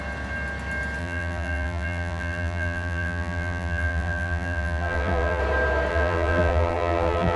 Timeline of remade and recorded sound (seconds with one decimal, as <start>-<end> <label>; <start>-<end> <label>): 0.0-1.0 recorded; 1.0-5.4 remade; 5.4-5.9 recorded; 5.9-7.4 remade